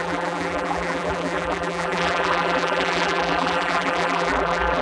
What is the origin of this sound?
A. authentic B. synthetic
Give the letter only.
B